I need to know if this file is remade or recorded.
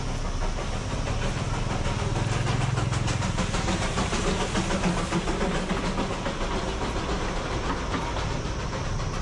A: recorded